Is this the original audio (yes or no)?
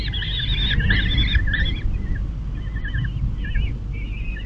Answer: yes